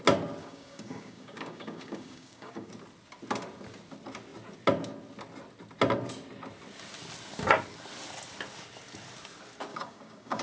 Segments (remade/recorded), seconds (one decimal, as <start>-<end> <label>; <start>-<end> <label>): 0.0-0.4 recorded; 0.4-2.7 remade; 2.7-9.7 recorded; 9.7-10.4 remade